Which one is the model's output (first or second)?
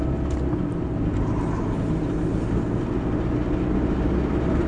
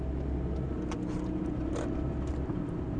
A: second